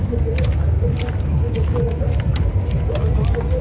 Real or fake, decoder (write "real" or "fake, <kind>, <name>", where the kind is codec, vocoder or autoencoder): real